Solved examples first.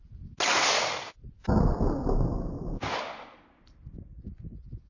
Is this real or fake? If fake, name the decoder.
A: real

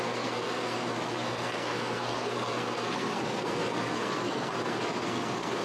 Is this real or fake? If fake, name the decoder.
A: fake, codec, SNAC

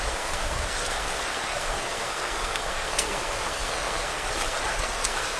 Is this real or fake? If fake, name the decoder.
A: fake, codec, SNAC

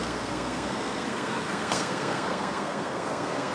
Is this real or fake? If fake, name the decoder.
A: fake, codec, SNAC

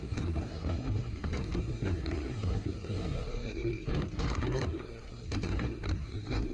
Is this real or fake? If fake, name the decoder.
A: fake, codec, SNAC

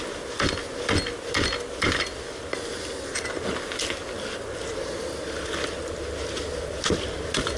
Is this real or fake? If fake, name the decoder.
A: real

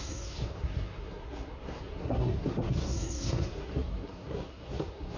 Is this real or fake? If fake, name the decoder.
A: fake, codec, SNAC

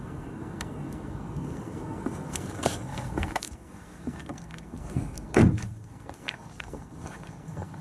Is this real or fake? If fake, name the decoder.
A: fake, codec, SNAC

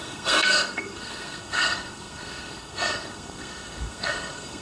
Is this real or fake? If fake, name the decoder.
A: fake, codec, SNAC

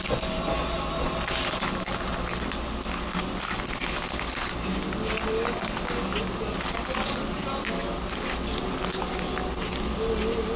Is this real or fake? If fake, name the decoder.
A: real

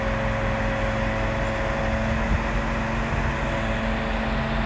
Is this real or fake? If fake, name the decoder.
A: real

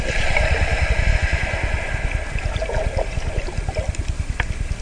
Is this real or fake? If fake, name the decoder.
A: real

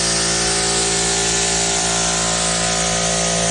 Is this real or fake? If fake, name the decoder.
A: real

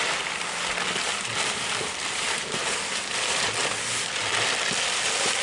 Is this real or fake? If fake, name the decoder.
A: real